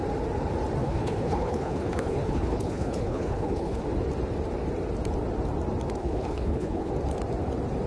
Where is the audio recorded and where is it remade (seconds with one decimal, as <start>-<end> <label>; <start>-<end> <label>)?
0.0-0.8 recorded; 0.8-3.8 remade; 3.8-6.0 recorded; 6.0-6.9 remade; 6.9-7.9 recorded